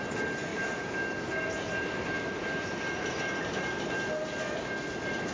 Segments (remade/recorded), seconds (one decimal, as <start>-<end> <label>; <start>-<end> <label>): 0.0-0.5 recorded; 0.5-3.7 remade; 3.7-5.3 recorded